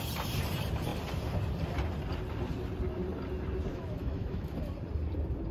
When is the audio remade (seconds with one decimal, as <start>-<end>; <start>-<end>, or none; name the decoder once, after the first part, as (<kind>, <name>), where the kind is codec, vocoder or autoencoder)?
3.7-4.5 (autoencoder, DAC-VAE)